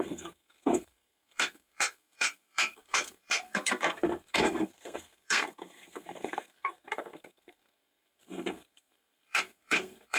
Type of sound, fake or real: fake